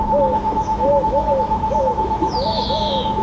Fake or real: fake